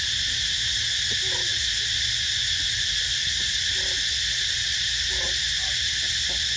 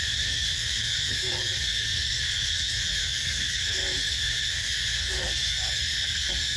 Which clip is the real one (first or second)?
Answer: first